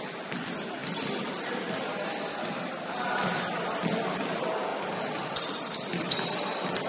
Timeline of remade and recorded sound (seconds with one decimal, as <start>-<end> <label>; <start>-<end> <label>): 0.0-0.8 recorded; 0.8-1.5 remade; 1.5-4.7 recorded; 4.7-6.9 remade